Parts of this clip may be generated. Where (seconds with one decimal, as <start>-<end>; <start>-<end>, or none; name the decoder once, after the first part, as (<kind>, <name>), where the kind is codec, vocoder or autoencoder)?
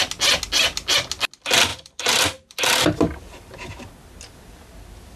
1.7-3.9 (vocoder, BigVGAN v2)